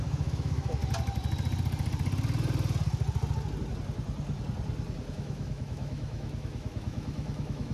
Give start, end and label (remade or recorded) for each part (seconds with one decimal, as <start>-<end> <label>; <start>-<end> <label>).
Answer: 0.0-0.8 remade; 0.8-5.1 recorded; 5.1-7.7 remade